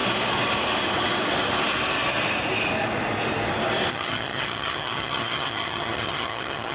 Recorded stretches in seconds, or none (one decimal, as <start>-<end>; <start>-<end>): 0.0-3.9